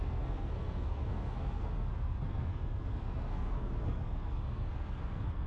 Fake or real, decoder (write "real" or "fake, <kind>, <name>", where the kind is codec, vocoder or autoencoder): fake, codec, SNAC